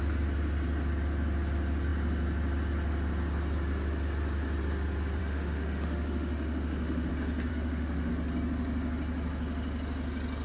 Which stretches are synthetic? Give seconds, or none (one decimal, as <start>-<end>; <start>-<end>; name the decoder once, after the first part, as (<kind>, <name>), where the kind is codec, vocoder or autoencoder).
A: 5.2-7.1 (autoencoder, DAC-VAE); 7.5-8.1